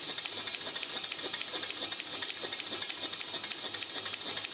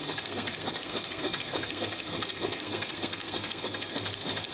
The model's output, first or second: second